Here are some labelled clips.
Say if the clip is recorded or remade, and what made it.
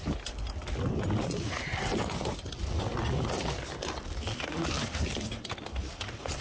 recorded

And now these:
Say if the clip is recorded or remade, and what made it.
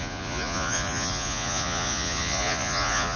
remade, vocoder, Vocos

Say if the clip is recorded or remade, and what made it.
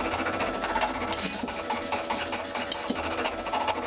recorded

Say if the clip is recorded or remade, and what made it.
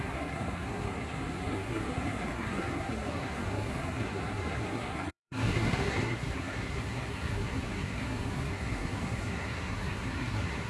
remade, codec, SNAC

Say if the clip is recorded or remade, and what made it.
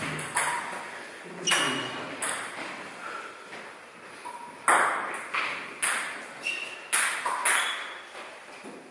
recorded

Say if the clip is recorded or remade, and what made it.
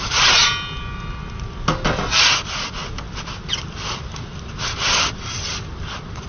recorded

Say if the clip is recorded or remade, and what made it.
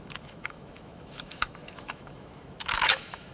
remade, autoencoder, DAC-VAE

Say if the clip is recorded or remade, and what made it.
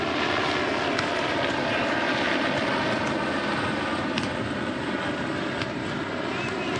recorded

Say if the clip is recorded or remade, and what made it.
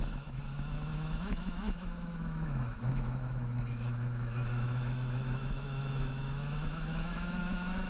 remade, autoencoder, DAC-VAE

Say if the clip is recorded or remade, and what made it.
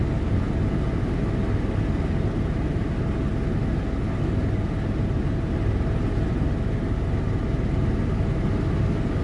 recorded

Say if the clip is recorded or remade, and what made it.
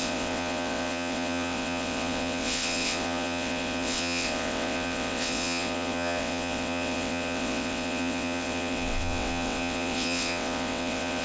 remade, vocoder, WaveNeXt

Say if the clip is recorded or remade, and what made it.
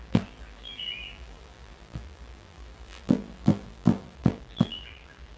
remade, vocoder, BigVGAN v2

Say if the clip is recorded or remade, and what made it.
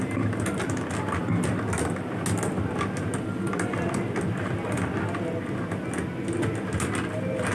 recorded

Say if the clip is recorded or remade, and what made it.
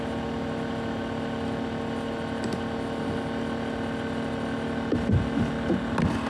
recorded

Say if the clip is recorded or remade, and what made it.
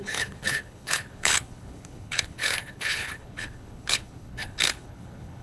remade, codec, HILCodec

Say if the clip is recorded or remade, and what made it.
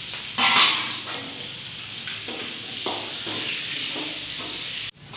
recorded